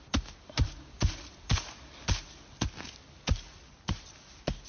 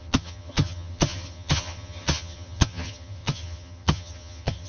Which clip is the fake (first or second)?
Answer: second